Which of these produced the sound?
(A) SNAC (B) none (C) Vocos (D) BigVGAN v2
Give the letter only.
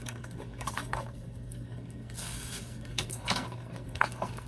A